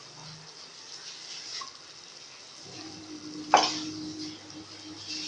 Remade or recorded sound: recorded